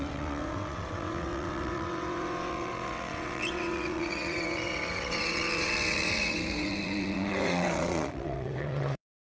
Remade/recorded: remade